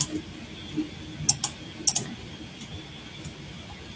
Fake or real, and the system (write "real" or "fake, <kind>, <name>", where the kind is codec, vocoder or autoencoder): real